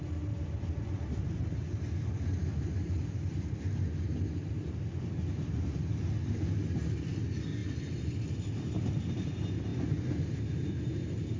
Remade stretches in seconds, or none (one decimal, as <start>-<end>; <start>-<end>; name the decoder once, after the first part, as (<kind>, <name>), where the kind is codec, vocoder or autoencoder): none